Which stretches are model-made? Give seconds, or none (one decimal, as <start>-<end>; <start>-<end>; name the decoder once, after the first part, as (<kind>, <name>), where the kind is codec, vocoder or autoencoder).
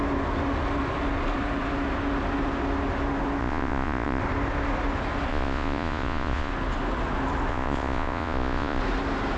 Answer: 3.4-4.2 (vocoder, Vocos); 5.3-6.5; 7.5-8.8